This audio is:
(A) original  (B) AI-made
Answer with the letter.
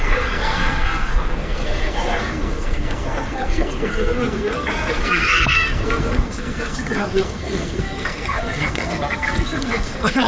B